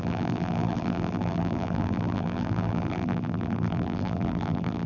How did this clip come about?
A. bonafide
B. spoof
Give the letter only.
B